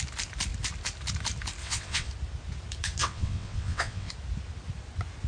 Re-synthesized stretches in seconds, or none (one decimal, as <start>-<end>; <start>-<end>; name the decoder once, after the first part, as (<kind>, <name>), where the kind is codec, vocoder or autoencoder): 1.6-2.1 (vocoder, WaveNeXt); 3.0-4.1